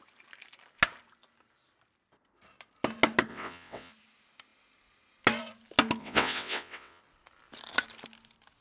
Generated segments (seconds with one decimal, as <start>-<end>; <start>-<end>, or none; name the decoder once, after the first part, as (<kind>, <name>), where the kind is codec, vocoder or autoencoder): 3.3-3.9 (vocoder, WaveNeXt); 6.0-7.0